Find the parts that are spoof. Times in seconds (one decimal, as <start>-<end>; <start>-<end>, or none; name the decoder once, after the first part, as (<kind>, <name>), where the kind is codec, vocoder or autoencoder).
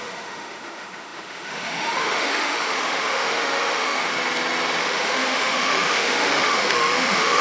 0.0-4.1 (autoencoder, DAC-VAE); 4.8-7.4